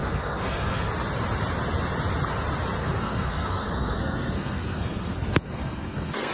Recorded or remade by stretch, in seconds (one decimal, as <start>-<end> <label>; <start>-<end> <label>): 0.0-0.9 remade; 0.9-2.8 recorded; 2.8-6.3 remade

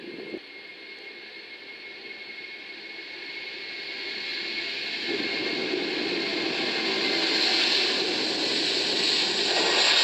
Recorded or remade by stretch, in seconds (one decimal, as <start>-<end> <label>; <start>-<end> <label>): 0.0-10.0 recorded

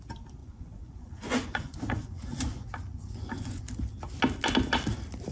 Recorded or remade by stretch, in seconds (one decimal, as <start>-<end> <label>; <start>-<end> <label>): 0.0-0.4 recorded; 0.4-3.6 remade; 3.6-5.3 recorded

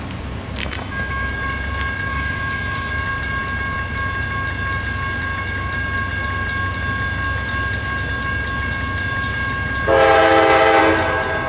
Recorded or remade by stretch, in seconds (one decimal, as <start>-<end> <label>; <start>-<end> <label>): 0.0-0.6 recorded; 0.6-1.3 remade; 1.3-2.1 recorded; 2.1-2.9 remade; 2.9-11.5 recorded